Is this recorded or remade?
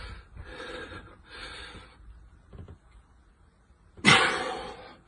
recorded